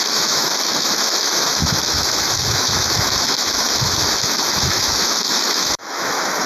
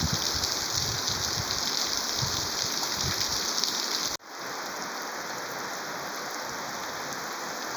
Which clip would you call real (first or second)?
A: second